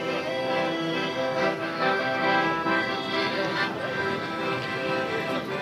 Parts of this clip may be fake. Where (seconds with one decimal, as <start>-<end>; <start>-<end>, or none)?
1.4-2.0